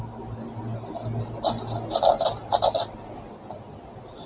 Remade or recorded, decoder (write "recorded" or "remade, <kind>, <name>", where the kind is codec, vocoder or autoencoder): recorded